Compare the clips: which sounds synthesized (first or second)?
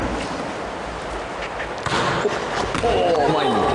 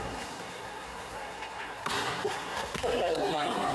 second